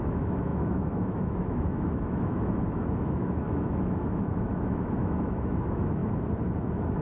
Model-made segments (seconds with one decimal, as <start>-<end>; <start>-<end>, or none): 0.0-6.0